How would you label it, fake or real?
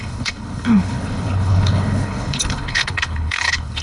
fake